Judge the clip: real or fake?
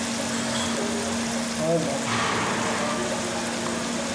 real